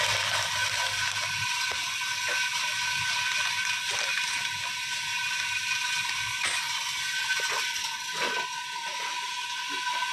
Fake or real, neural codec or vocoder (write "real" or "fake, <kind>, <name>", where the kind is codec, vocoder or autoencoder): real